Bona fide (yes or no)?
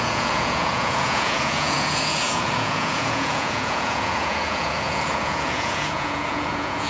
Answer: no